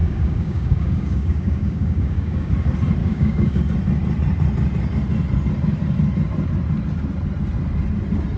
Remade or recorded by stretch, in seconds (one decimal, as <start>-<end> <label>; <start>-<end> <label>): 0.0-2.5 remade; 2.5-3.0 recorded; 3.0-3.6 remade; 3.6-8.4 recorded